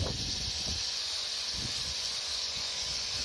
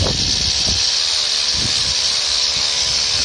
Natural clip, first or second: second